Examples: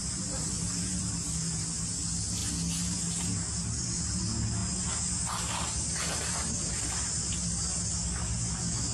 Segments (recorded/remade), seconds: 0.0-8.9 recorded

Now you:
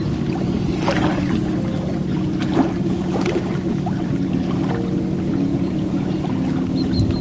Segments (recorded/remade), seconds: 0.0-5.5 recorded; 5.5-6.1 remade; 6.1-7.2 recorded

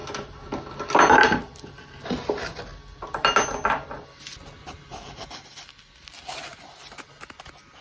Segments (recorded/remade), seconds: 0.0-1.2 recorded; 1.2-2.7 remade; 2.7-4.6 recorded; 4.6-7.8 remade

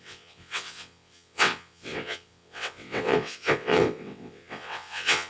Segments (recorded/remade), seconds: 0.0-5.3 remade